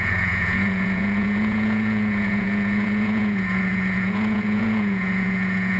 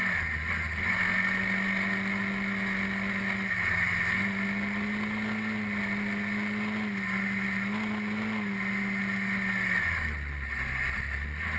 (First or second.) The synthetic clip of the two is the first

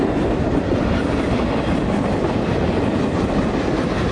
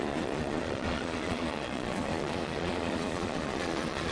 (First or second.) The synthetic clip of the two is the second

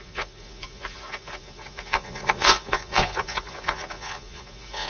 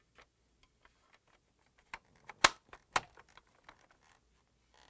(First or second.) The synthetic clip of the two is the first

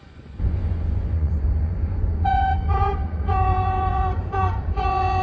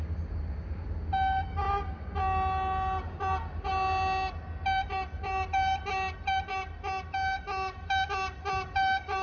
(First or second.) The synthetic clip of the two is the first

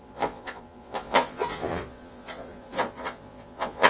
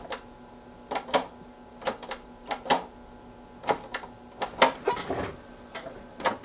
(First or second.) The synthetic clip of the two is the first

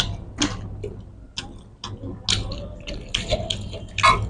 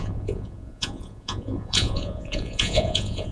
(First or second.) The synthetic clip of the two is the second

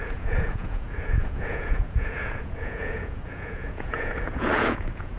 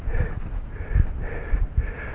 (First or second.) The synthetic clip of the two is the first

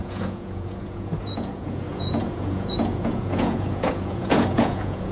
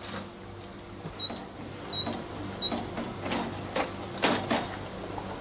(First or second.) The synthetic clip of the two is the first